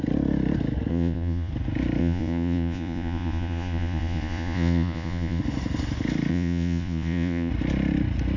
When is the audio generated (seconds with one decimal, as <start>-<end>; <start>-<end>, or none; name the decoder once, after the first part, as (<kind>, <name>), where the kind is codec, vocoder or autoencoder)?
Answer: 0.9-1.5 (vocoder, Vocos); 2.0-5.4; 6.3-7.5